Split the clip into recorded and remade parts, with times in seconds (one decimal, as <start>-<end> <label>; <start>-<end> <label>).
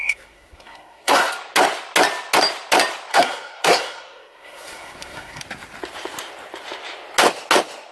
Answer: 0.0-1.3 remade; 1.3-3.1 recorded; 3.1-5.4 remade; 5.4-7.9 recorded